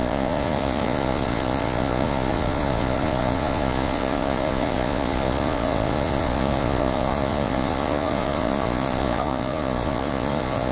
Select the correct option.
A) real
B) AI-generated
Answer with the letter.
B